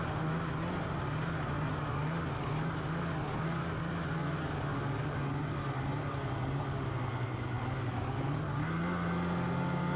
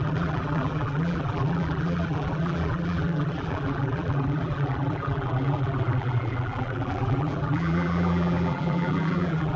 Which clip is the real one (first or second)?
first